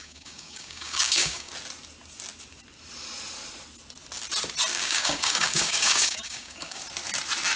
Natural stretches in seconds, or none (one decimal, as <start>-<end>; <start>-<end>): 1.5-4.7; 6.8-7.6